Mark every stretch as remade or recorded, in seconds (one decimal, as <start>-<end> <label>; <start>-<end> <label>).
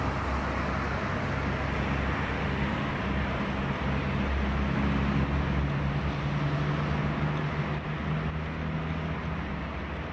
0.0-2.3 recorded; 2.3-2.9 remade; 2.9-10.1 recorded